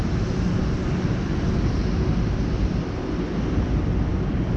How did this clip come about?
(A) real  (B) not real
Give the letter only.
A